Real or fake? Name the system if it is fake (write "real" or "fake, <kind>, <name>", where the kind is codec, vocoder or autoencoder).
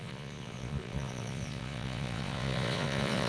fake, vocoder, Vocos